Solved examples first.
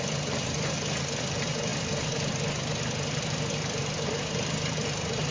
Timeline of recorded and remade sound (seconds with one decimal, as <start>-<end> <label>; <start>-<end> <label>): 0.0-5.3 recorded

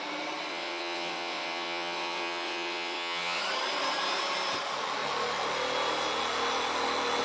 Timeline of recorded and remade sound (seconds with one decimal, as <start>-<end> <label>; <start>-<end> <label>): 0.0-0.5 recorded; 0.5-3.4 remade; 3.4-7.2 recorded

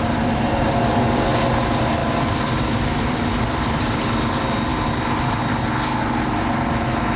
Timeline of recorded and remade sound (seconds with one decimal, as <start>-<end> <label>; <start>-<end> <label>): 0.0-2.0 recorded; 2.0-3.8 remade; 3.8-7.2 recorded

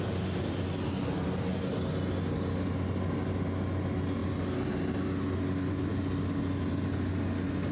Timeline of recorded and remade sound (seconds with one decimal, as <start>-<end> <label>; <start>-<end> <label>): 0.0-7.7 recorded

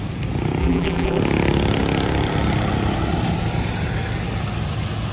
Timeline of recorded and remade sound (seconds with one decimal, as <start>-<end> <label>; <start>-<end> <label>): 0.0-0.6 recorded; 0.6-1.2 remade; 1.2-5.1 recorded

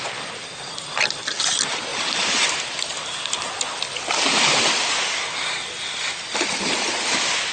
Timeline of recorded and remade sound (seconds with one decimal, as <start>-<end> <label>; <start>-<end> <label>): 0.0-1.9 recorded; 1.9-3.5 remade; 3.5-7.5 recorded

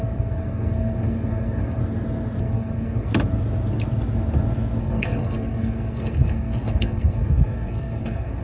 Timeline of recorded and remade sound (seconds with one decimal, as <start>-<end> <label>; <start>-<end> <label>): 0.0-1.8 remade; 1.8-2.4 recorded; 2.4-3.1 remade; 3.1-4.8 recorded; 4.8-8.4 remade